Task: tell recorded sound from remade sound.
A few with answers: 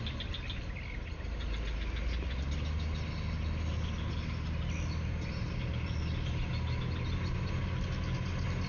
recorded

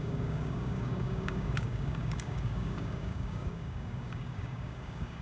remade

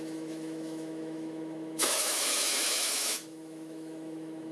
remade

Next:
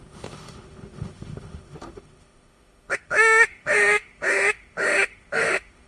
remade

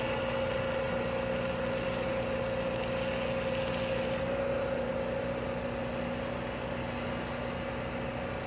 recorded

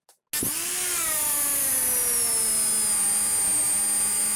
recorded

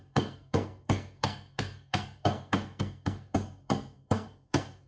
remade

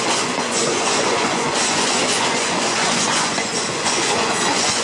remade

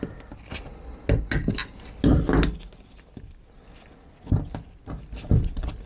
recorded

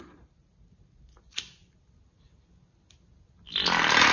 recorded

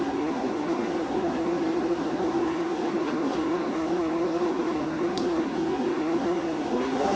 remade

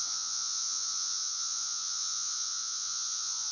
remade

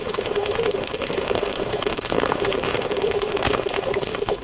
remade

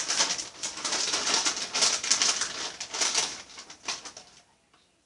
recorded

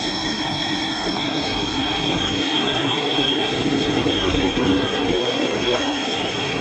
remade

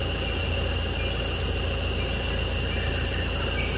recorded